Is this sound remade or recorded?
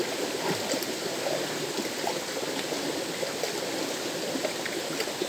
recorded